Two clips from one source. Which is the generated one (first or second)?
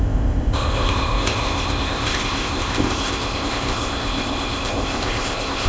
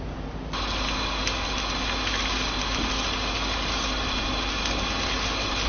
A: first